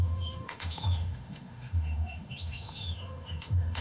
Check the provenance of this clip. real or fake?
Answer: fake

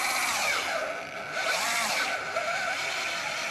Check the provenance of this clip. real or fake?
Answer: real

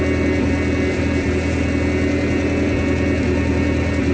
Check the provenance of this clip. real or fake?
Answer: real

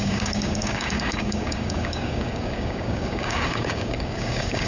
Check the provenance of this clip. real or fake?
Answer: fake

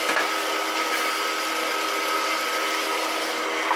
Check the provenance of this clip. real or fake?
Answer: real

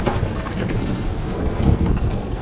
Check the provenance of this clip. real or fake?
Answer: fake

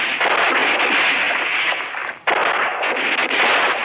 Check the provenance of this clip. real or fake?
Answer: real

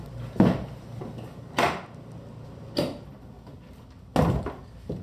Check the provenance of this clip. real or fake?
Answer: real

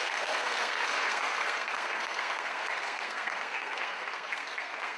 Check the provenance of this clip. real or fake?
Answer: fake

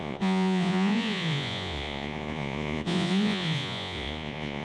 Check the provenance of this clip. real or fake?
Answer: fake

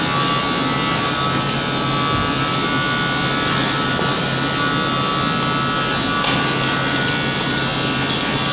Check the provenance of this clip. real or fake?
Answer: real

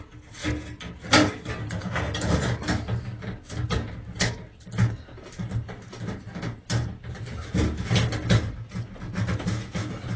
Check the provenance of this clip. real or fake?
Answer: real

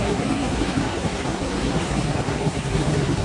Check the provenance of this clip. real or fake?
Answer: fake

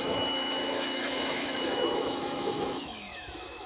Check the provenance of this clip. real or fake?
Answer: fake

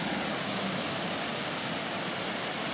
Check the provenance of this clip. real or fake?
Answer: real